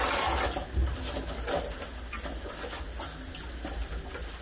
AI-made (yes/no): no